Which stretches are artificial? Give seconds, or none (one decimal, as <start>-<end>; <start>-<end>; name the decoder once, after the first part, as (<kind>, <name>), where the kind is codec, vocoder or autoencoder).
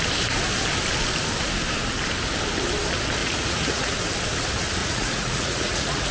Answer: 3.2-3.9 (vocoder, Vocos); 4.8-6.1